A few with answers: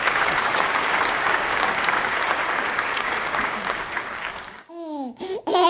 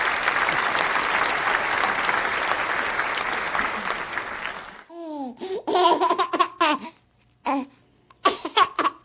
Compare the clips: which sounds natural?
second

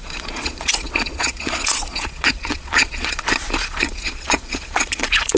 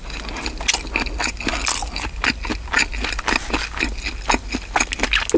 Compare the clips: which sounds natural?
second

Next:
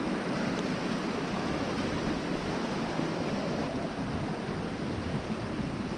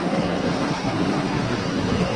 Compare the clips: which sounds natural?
first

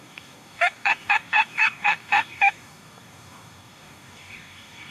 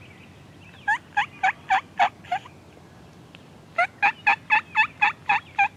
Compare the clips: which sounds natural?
second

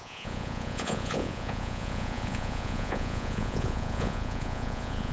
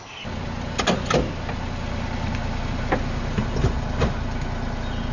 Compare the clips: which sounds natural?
second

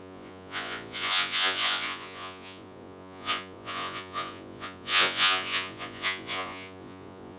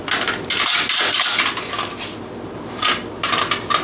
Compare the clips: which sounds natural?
second